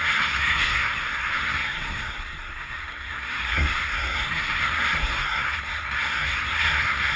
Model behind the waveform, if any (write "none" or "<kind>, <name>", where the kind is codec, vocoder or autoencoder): codec, SNAC